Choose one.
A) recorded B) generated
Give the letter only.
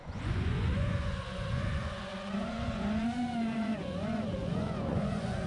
B